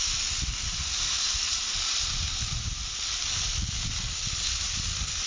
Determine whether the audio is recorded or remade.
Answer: recorded